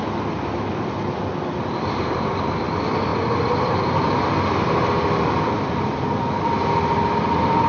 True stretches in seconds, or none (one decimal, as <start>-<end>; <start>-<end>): 0.0-7.7